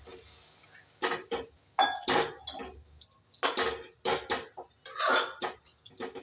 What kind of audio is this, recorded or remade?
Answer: recorded